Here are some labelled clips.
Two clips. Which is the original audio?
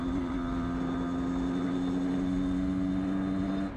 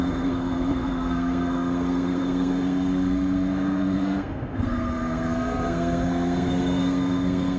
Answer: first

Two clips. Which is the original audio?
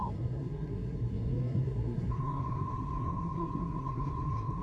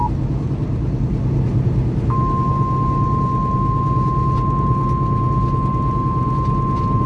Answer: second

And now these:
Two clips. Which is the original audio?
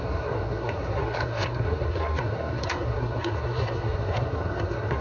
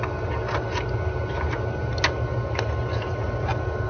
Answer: second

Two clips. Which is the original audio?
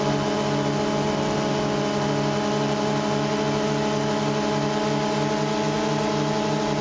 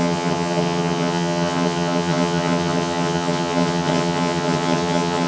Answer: first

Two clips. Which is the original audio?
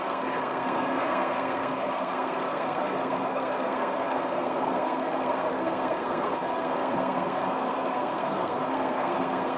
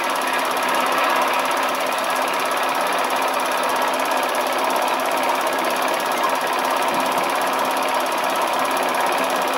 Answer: second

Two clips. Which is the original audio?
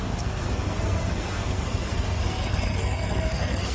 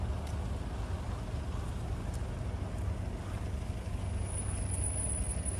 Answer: second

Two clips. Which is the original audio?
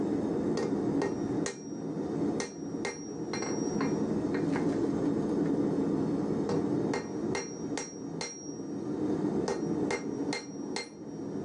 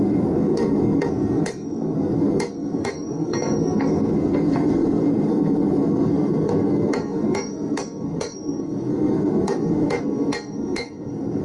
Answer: first